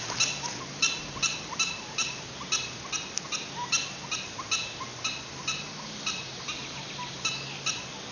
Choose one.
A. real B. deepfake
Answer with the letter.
A